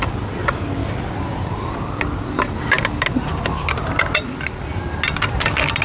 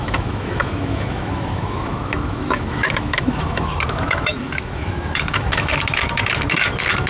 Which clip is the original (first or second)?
first